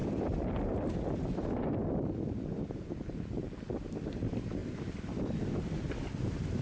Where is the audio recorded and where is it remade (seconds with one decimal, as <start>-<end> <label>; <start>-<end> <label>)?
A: 0.0-4.0 remade; 4.0-4.6 recorded; 4.6-5.4 remade; 5.4-6.6 recorded